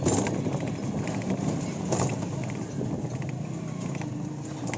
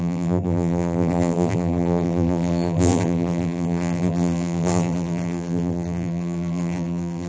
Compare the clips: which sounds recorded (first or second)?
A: first